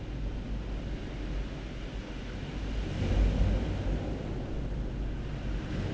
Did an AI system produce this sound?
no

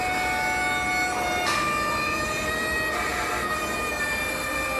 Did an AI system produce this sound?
no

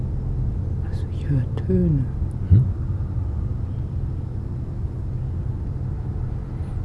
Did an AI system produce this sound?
no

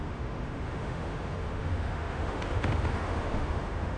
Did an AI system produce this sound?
yes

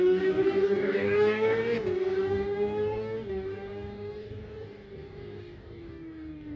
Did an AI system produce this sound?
yes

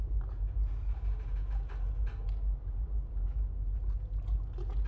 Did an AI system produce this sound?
no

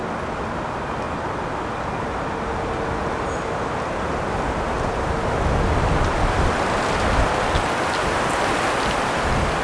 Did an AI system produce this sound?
no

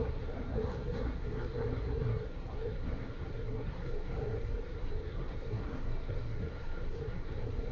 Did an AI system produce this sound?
yes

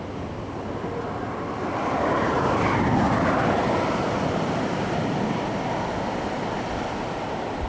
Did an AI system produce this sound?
no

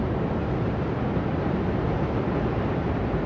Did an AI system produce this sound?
no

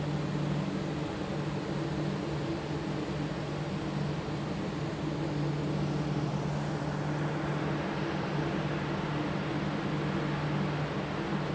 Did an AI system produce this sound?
no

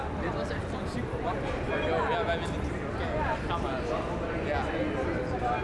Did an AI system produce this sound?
no